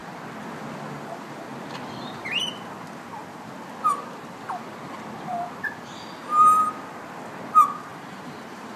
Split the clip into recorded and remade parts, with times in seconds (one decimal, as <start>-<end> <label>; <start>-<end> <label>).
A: 0.0-7.9 recorded; 7.9-8.8 remade